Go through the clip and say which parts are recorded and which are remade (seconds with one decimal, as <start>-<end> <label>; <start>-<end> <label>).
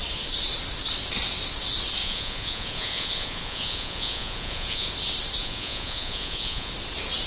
0.0-2.0 recorded; 2.0-4.9 remade; 4.9-5.4 recorded; 5.4-6.7 remade; 6.7-7.3 recorded